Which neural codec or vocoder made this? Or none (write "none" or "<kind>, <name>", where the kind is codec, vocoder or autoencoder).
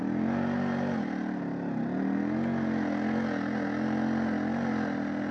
none